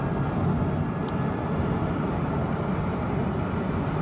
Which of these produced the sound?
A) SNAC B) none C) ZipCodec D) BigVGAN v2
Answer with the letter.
B